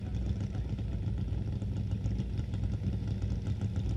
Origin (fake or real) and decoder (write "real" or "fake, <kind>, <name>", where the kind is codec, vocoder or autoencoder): real